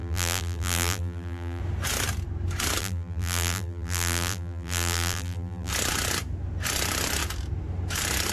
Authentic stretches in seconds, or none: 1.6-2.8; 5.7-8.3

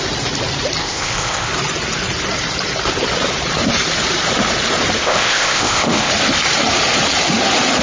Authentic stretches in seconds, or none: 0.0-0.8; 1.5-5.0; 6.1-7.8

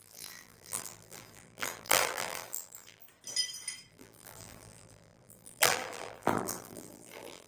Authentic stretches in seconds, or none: 3.0-3.9

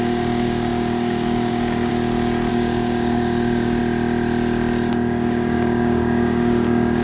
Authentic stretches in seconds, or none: 1.9-2.5; 3.8-4.9

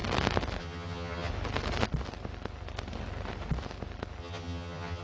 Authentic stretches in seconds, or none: 0.0-0.6; 1.3-4.2

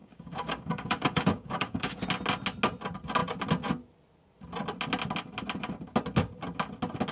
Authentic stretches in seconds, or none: 2.0-7.1

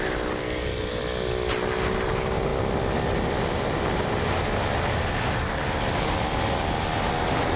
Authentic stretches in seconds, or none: 0.0-0.4; 1.0-7.6

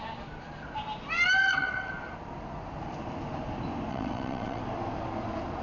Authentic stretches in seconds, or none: 0.0-1.4; 1.9-3.9; 4.6-5.6